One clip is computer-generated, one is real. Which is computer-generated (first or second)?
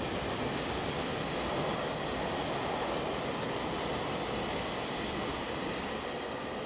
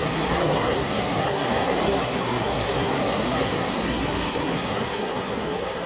second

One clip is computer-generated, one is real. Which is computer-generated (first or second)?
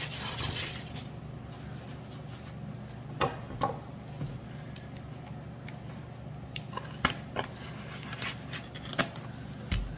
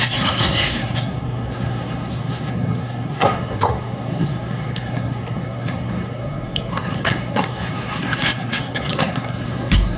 second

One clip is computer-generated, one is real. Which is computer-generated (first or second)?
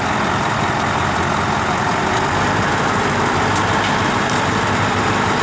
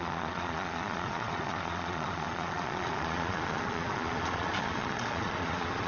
second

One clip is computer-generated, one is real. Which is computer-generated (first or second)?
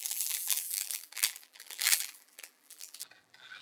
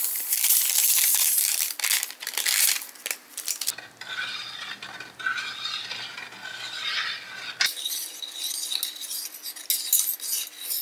first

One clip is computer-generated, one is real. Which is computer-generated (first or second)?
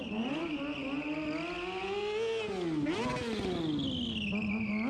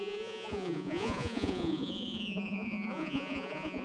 second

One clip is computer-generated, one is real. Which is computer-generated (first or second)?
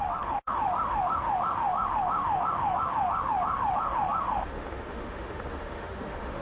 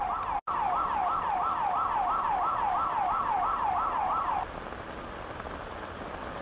first